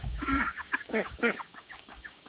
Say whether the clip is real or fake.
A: fake